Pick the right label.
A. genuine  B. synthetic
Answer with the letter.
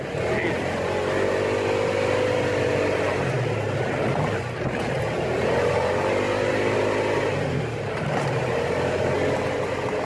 A